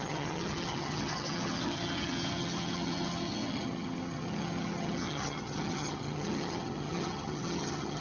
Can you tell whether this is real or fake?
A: fake